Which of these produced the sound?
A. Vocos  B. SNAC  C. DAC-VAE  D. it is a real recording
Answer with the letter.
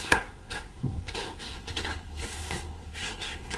B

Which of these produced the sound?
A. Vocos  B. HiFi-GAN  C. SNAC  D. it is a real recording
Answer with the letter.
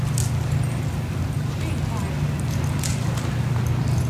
D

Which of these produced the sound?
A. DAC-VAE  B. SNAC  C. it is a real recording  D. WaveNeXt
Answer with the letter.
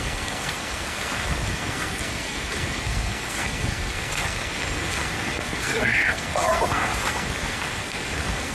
B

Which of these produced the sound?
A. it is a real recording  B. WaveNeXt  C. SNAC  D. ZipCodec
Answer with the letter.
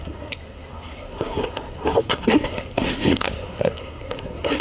C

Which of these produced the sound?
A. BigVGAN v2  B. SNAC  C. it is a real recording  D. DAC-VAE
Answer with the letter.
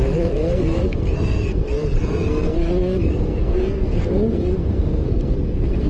B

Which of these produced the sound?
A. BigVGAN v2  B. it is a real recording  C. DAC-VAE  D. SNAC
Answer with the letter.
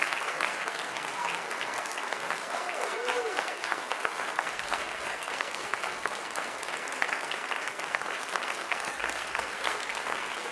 D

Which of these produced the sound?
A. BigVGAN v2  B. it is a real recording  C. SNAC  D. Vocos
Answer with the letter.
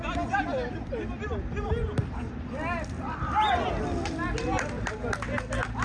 B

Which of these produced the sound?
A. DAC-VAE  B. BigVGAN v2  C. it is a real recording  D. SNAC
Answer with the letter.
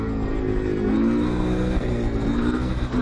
D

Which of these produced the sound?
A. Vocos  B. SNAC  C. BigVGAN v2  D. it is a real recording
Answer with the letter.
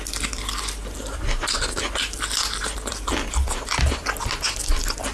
D